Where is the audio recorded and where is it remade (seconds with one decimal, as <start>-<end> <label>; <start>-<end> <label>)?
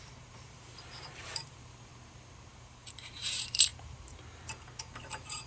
0.0-1.9 remade; 1.9-2.5 recorded; 2.5-5.5 remade